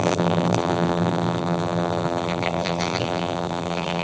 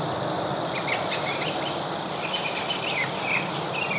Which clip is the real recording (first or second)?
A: second